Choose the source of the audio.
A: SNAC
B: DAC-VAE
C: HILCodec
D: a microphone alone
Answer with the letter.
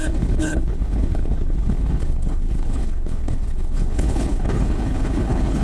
C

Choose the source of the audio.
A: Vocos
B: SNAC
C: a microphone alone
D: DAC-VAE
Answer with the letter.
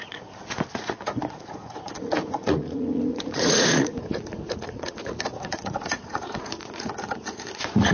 A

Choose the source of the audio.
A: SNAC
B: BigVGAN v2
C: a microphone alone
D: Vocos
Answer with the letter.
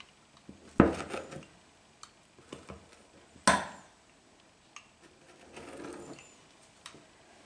C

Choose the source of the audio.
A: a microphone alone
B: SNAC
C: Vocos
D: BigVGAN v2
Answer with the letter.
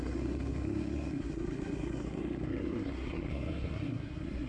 B